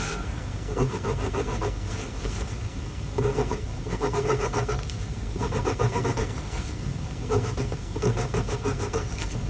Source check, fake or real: fake